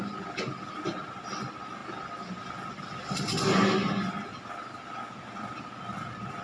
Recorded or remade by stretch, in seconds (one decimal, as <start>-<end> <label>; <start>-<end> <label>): 0.0-6.4 recorded